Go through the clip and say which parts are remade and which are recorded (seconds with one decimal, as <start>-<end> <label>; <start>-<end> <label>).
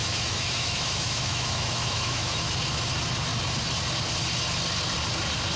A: 0.0-2.5 remade; 2.5-5.6 recorded